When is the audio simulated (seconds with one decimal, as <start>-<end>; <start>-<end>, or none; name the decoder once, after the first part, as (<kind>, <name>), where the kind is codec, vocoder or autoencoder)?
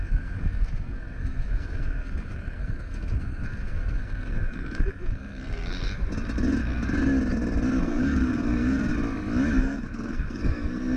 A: 0.0-6.0 (codec, SNAC); 7.8-8.9; 9.6-11.0